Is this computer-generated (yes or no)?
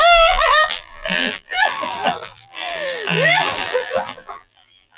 yes